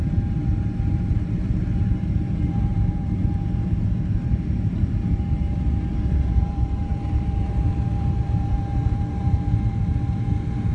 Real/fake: fake